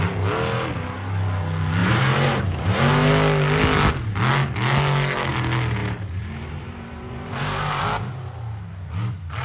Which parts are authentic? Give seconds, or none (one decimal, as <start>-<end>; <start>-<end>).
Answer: 0.0-1.8; 2.8-5.8; 7.8-9.4